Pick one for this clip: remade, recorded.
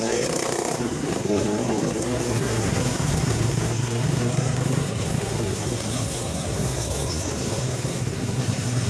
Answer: remade